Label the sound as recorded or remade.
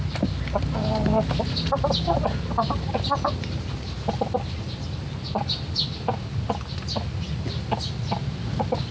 recorded